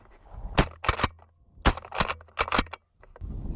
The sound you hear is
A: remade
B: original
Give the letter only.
B